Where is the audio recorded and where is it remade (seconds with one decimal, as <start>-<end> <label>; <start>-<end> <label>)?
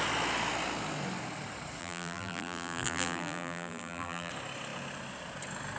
0.0-1.8 recorded; 1.8-4.3 remade; 4.3-5.8 recorded